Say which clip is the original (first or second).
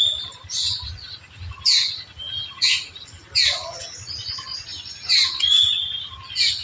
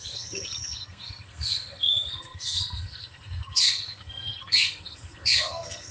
first